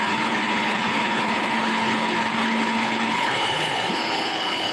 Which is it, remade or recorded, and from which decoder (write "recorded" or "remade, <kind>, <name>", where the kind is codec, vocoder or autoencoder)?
remade, codec, HILCodec